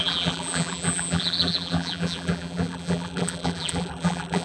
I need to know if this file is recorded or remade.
remade